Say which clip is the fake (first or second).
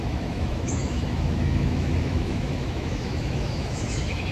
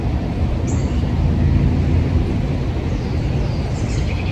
first